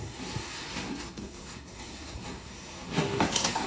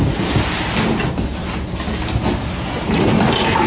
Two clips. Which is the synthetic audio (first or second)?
first